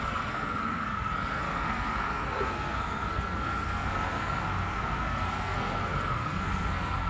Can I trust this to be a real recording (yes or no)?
no